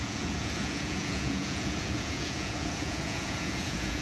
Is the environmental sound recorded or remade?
remade